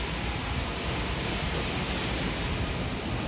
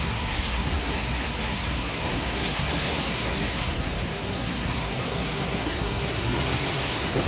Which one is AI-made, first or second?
second